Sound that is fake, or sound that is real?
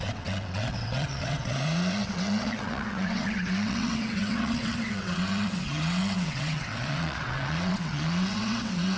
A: fake